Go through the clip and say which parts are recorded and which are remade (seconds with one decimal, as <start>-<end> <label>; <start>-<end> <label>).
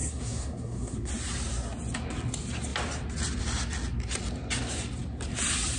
0.0-1.1 remade; 1.1-5.8 recorded